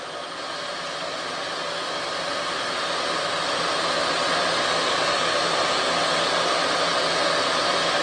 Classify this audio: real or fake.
real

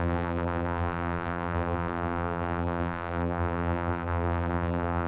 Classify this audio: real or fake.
fake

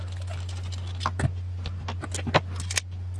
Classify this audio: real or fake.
real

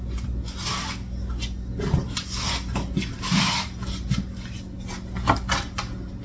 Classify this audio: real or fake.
real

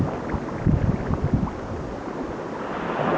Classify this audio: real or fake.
real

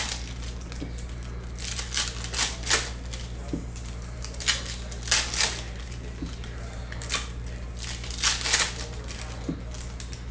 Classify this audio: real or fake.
real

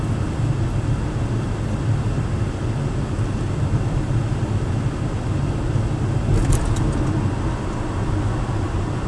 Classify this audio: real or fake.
real